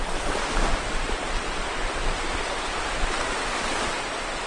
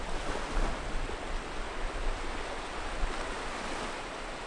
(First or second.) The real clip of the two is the second